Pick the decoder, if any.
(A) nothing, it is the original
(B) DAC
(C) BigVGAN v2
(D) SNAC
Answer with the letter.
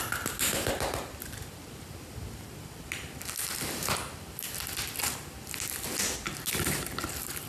A